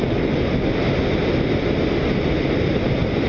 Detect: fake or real real